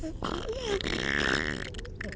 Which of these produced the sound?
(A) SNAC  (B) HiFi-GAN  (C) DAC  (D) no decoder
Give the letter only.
D